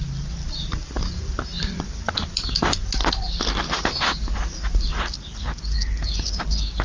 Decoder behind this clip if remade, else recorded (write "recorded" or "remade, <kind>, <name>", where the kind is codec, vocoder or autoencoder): recorded